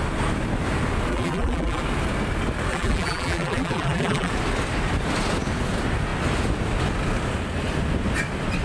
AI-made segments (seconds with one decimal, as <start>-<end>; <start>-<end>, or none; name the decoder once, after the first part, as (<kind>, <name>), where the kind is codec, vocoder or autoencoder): 1.1-1.8 (vocoder, BigVGAN v2); 2.7-4.3